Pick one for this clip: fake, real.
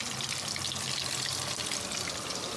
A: real